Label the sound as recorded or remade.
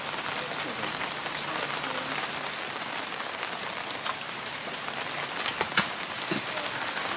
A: recorded